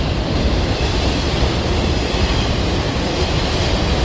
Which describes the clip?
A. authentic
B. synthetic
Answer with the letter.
B